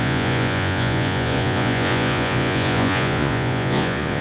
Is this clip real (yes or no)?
no